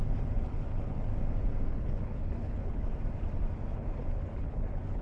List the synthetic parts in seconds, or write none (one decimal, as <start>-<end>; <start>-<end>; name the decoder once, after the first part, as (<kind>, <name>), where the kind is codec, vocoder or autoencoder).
0.0-1.1 (codec, HILCodec); 1.7-2.9; 3.7-5.0